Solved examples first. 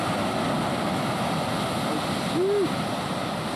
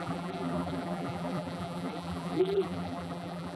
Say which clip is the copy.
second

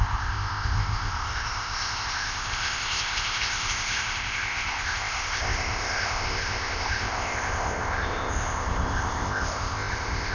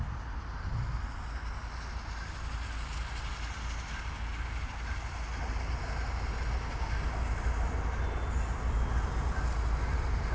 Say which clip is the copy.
first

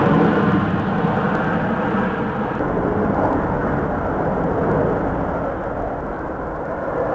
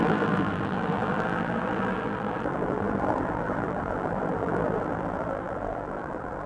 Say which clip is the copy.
second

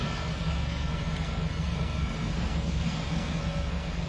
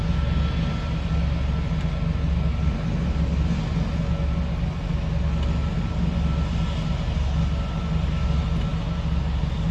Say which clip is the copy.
first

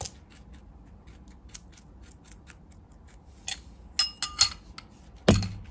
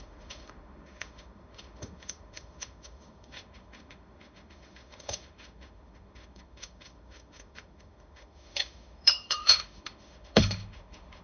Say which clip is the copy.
second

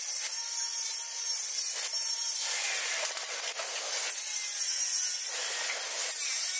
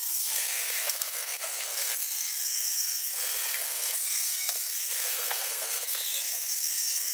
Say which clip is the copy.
second